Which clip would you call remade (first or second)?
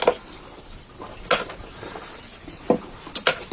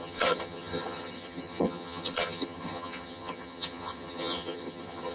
second